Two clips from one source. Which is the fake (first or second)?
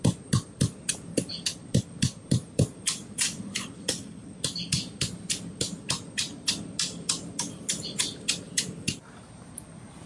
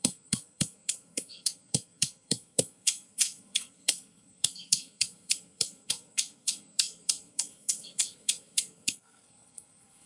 second